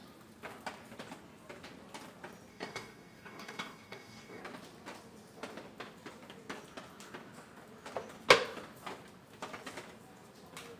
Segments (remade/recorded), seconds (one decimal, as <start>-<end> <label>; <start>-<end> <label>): 0.0-2.5 recorded; 2.5-4.4 remade; 4.4-10.8 recorded

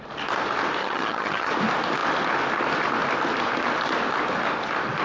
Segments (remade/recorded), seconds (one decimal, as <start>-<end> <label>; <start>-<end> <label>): 0.0-0.8 recorded; 0.8-1.5 remade; 1.5-5.0 recorded

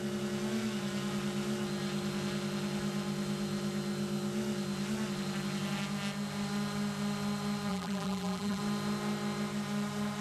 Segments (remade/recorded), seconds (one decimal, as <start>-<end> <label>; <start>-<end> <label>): 0.0-7.7 recorded; 7.7-8.6 remade; 8.6-10.2 recorded

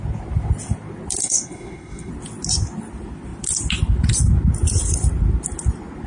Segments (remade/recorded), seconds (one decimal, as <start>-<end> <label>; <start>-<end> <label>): 0.0-1.2 recorded; 1.2-2.1 remade; 2.1-6.1 recorded

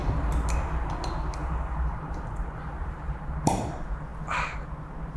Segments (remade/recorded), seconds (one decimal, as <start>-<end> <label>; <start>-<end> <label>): 0.0-0.9 remade; 0.9-1.4 recorded; 1.4-3.6 remade; 3.6-5.2 recorded